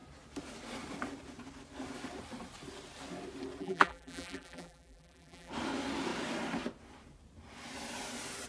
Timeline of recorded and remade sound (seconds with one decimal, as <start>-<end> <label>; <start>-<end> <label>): 0.0-3.6 recorded; 3.6-5.5 remade; 5.5-8.5 recorded